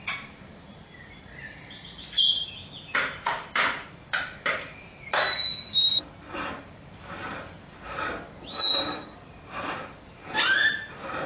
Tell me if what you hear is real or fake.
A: fake